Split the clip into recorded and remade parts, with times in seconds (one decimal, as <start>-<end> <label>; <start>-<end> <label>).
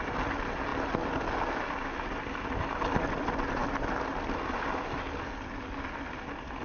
0.0-6.6 recorded